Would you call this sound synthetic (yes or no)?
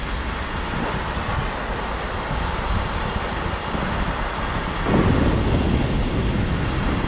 no